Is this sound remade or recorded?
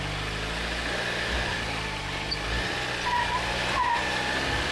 recorded